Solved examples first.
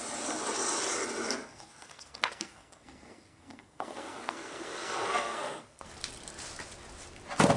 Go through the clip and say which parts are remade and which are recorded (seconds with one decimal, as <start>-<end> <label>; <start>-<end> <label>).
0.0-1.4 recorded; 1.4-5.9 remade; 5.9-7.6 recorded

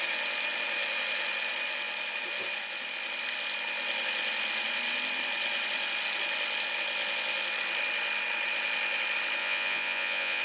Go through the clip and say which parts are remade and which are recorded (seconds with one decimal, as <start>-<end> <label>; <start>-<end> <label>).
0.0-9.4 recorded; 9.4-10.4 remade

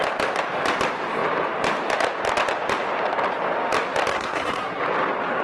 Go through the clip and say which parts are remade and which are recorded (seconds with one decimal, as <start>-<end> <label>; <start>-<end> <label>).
0.0-4.1 recorded; 4.1-4.8 remade; 4.8-5.4 recorded